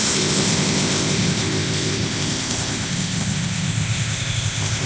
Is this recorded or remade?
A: remade